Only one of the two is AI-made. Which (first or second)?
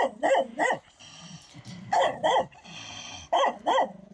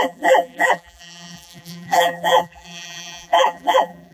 second